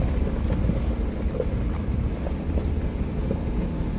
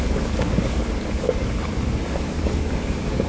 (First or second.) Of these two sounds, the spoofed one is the second